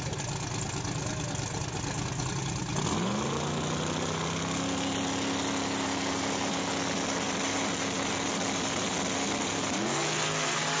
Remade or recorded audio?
recorded